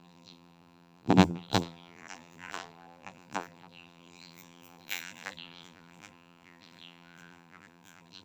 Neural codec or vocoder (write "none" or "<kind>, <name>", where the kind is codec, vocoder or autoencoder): vocoder, BigVGAN v2